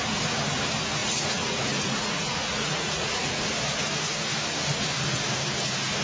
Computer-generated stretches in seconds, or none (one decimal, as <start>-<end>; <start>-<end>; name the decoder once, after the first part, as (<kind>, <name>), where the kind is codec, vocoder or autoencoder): 1.0-3.5 (vocoder, Vocos)